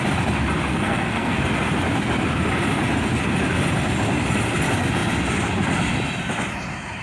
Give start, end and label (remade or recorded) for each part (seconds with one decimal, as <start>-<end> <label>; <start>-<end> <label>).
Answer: 0.0-0.7 recorded; 0.7-1.4 remade; 1.4-7.0 recorded